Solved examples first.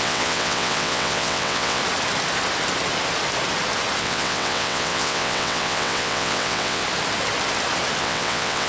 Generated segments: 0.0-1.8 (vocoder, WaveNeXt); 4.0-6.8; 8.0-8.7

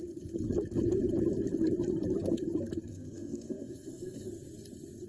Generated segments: 2.9-4.3 (codec, SNAC)

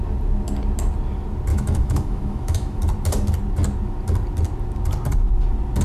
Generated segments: 1.5-2.8 (autoencoder, DAC-VAE)

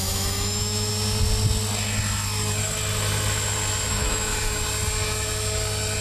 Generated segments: 0.0-0.9 (autoencoder, DAC-VAE); 3.9-4.3

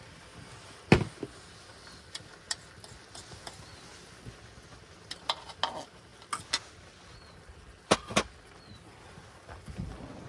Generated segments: none

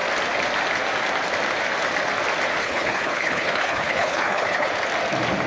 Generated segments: 2.6-4.7 (codec, HILCodec)